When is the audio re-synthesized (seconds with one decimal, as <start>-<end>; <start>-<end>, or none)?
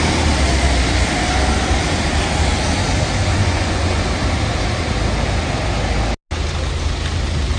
3.4-4.0